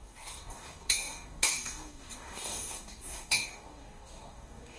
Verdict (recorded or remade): remade